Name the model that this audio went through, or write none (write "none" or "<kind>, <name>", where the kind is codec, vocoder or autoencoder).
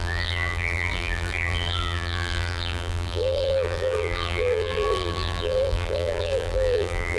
vocoder, BigVGAN v2